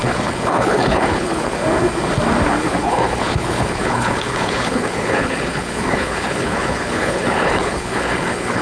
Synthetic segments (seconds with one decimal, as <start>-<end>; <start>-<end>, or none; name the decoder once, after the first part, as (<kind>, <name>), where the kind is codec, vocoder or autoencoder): 0.0-1.6 (codec, HILCodec); 2.6-8.6